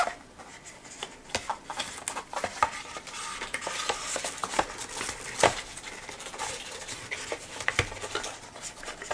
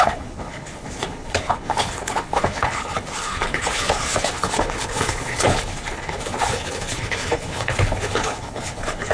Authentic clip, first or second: first